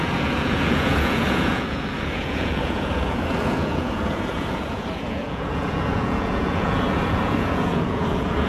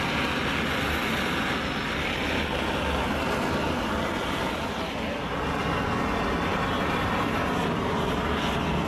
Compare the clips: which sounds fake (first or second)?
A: first